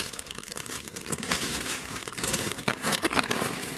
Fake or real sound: fake